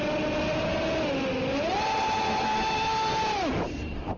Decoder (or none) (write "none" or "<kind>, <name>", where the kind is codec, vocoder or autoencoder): none